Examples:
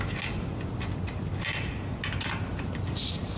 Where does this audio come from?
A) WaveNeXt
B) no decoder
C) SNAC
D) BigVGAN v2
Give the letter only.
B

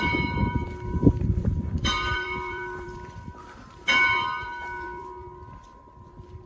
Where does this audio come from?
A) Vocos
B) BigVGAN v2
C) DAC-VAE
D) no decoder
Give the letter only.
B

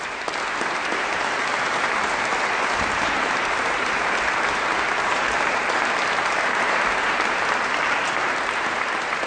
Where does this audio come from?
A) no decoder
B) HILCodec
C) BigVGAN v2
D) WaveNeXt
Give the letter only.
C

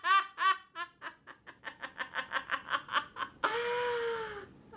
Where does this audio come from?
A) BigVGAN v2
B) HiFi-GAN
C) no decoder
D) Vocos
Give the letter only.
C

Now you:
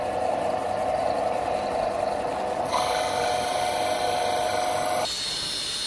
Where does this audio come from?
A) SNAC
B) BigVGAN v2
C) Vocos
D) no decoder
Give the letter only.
D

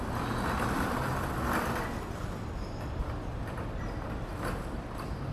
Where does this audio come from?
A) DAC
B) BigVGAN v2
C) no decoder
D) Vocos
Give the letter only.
C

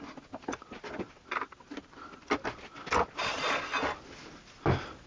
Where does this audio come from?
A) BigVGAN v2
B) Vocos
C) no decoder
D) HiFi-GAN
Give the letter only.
C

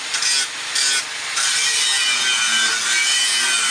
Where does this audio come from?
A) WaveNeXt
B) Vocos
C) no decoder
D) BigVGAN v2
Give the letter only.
C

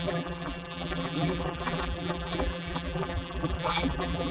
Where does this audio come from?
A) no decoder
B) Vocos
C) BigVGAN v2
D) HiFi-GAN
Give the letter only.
C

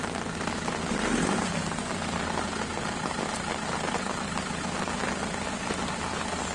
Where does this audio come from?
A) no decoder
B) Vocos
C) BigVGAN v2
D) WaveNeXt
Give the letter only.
A